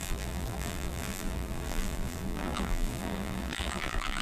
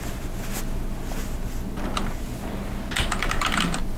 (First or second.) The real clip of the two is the second